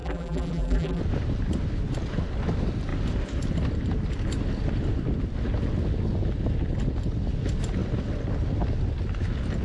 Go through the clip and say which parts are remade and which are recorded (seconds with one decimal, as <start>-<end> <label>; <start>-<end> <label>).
0.0-1.0 remade; 1.0-9.6 recorded